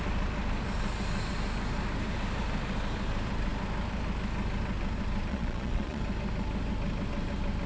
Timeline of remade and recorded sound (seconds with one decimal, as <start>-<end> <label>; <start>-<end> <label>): 0.0-5.3 recorded; 5.3-6.0 remade; 6.0-7.7 recorded